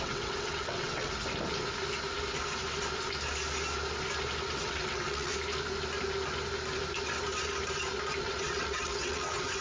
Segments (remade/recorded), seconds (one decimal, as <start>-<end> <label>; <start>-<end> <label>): 0.0-1.1 remade; 1.1-4.6 recorded; 4.6-5.3 remade; 5.3-8.2 recorded; 8.2-9.6 remade